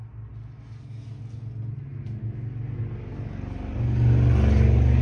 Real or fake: real